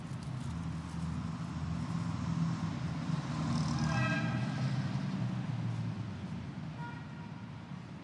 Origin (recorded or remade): recorded